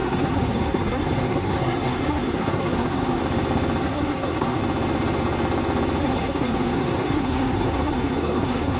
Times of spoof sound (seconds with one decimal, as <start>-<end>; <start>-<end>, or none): 0.0-3.2; 3.8-4.6; 6.0-8.8